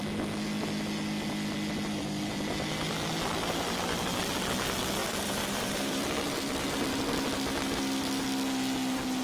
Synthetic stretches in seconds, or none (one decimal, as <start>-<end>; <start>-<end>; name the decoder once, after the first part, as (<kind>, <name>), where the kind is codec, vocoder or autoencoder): 5.0-6.9 (vocoder, BigVGAN v2)